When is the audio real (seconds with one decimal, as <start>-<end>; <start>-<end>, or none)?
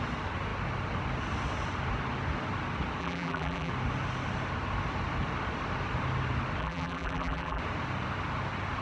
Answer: 0.0-3.0; 3.7-6.6; 7.6-8.8